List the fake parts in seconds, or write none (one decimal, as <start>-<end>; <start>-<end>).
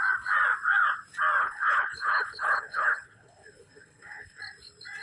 1.4-4.4